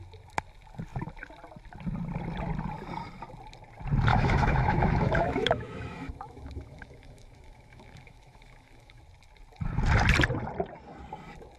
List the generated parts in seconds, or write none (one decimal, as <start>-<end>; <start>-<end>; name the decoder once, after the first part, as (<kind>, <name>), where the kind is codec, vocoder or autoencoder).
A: 4.1-9.0 (autoencoder, DAC-VAE)